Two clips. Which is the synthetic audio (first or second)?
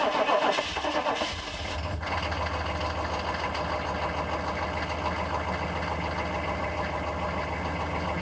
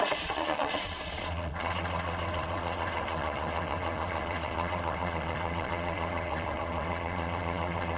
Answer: second